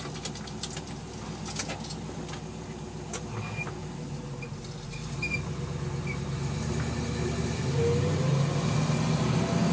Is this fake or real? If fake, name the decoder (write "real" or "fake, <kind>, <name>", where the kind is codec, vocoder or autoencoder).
real